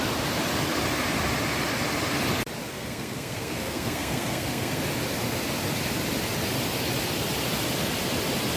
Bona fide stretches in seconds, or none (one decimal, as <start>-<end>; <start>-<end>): 0.0-2.7; 4.8-8.6